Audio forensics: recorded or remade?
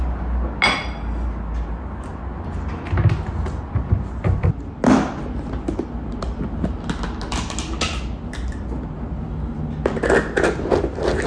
recorded